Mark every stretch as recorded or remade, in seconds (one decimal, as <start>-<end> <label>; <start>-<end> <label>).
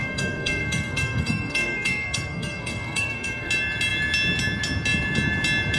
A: 0.0-3.5 remade; 3.5-5.8 recorded